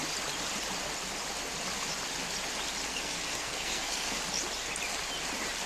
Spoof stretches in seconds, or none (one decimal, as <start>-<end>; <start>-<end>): 2.9-4.2